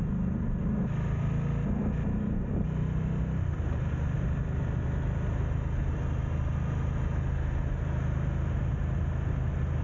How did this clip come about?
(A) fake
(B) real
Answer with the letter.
B